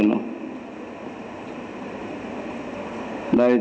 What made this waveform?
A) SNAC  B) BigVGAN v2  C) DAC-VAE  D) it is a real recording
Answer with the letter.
D